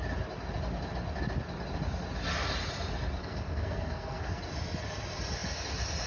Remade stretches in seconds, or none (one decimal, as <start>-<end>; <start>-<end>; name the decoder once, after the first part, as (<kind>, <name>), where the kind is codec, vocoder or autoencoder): 3.2-4.4 (codec, SNAC)

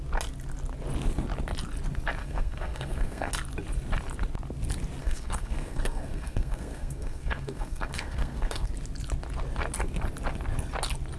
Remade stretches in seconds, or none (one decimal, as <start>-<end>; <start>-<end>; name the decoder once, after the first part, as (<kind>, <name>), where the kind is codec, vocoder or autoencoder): 2.2-3.3 (codec, SNAC); 5.0-8.7